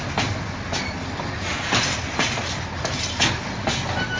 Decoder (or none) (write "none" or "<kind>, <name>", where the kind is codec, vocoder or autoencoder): none